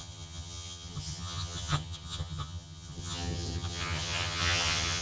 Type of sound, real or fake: fake